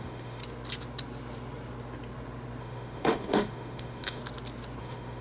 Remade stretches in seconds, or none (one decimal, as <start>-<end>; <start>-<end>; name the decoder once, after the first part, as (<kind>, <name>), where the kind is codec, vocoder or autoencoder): 0.0-0.4 (autoencoder, DAC-VAE); 2.6-4.2; 4.8-5.2